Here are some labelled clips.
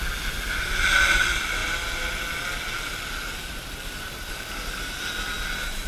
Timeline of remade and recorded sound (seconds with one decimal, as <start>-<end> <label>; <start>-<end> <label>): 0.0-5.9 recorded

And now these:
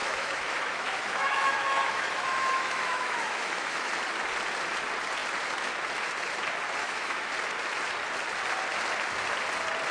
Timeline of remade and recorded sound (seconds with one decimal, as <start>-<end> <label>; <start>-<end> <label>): 0.0-3.9 remade; 3.9-6.8 recorded; 6.8-7.3 remade; 7.3-9.9 recorded

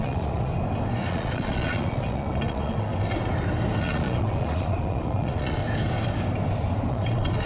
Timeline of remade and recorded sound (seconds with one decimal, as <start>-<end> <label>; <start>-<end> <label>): 0.0-0.5 remade; 0.5-1.1 recorded; 1.1-2.9 remade; 2.9-3.8 recorded; 3.8-5.6 remade; 5.6-6.9 recorded; 6.9-7.5 remade